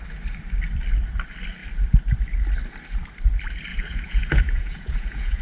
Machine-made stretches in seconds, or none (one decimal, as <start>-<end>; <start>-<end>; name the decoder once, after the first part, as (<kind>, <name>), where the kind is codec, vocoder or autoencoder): 3.7-5.4 (vocoder, Vocos)